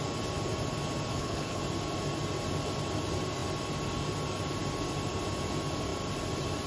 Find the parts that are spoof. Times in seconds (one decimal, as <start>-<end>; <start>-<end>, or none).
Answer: 1.1-1.6